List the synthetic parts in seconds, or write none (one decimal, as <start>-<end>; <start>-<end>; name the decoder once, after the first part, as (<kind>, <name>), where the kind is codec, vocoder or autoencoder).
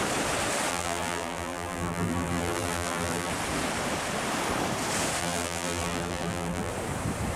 0.7-3.3 (vocoder, BigVGAN v2); 5.2-6.7